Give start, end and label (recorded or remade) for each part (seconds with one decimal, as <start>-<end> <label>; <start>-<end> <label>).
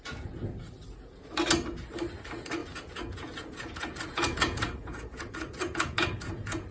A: 0.0-2.6 recorded; 2.6-6.7 remade